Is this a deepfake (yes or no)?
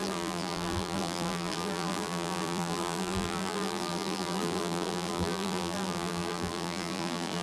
yes